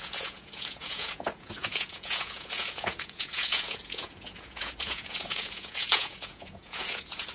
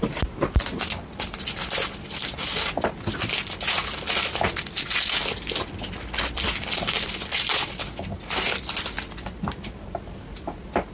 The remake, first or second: first